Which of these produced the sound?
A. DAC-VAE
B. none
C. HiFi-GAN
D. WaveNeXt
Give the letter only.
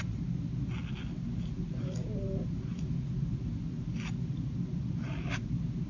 B